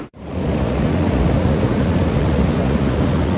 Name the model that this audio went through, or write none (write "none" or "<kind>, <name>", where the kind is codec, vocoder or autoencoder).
vocoder, Vocos